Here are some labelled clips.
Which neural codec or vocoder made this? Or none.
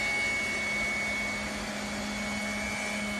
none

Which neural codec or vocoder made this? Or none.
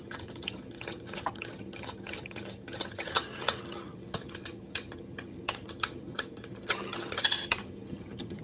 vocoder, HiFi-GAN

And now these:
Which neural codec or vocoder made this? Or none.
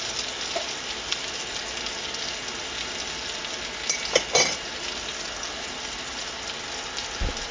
none